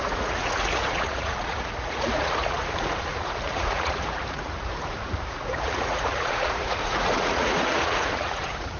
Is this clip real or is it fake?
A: fake